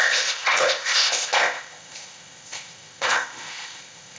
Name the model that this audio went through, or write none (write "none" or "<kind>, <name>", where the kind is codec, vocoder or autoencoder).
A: codec, ZipCodec